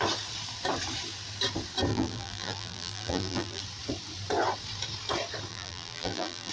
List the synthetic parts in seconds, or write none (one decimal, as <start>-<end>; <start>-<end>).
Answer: 1.9-3.6; 5.5-6.5